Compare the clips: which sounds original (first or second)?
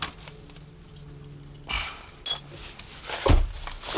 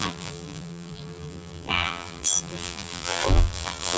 first